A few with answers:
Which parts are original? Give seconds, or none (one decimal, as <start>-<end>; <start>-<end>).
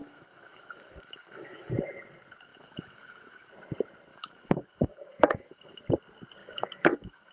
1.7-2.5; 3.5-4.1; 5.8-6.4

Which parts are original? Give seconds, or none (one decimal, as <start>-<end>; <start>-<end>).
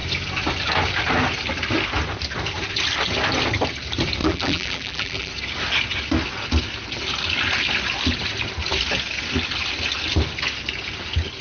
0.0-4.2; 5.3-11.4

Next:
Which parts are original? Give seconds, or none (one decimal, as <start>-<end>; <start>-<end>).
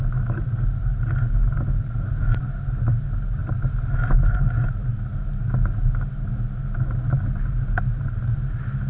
0.0-8.9